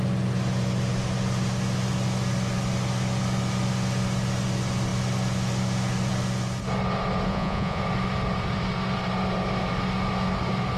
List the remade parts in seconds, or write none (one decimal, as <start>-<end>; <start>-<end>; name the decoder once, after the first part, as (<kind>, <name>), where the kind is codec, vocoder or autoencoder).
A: 7.3-7.8 (vocoder, Vocos)